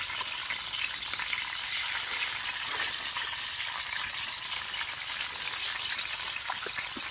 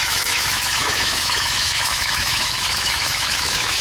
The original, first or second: first